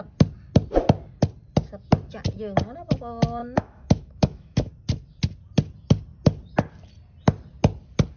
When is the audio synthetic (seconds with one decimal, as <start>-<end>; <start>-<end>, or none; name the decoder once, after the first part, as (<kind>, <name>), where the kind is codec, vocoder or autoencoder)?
3.4-4.7 (autoencoder, DAC-VAE)